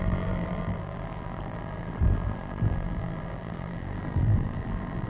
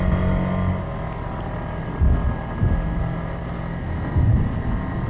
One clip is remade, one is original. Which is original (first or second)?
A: second